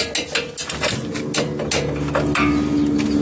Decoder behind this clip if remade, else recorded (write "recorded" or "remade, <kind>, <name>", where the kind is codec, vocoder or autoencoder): recorded